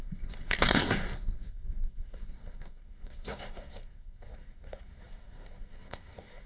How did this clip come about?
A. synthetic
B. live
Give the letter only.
A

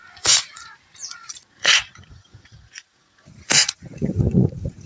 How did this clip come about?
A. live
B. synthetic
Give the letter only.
B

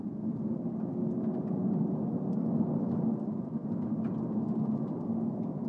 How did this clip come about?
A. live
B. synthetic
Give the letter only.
A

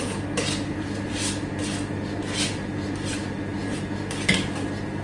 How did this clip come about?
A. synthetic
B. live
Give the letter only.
B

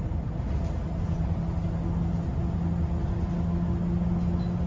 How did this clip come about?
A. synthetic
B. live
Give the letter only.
B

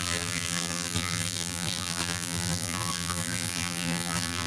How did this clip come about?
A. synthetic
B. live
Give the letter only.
A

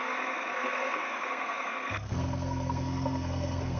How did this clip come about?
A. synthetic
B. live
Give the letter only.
A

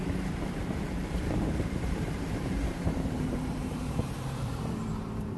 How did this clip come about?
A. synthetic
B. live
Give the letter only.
A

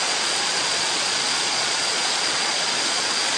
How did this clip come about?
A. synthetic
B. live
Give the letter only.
A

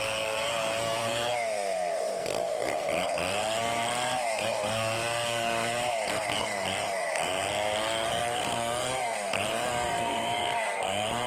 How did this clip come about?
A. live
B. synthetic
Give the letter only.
B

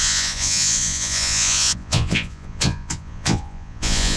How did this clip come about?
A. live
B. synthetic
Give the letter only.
B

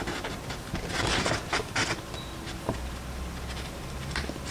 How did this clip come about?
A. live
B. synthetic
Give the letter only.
A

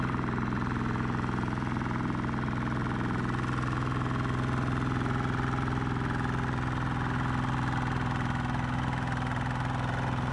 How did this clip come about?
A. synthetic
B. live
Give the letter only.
B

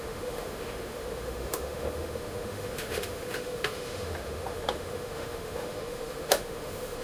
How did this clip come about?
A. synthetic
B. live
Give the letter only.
A